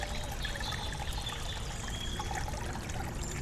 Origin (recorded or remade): recorded